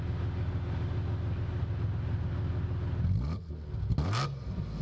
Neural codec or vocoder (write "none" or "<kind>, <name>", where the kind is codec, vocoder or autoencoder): none